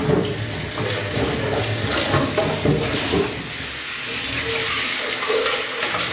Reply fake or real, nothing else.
real